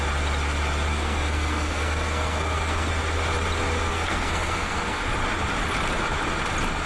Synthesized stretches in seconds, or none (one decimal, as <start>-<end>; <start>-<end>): 0.9-2.9; 3.9-5.0